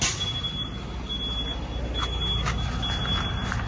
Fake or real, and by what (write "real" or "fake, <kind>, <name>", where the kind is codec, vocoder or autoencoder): real